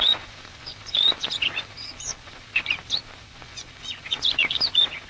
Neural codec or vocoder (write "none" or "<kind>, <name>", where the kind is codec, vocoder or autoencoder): vocoder, Vocos